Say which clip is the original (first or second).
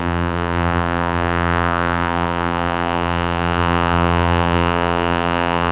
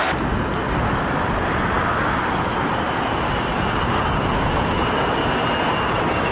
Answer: second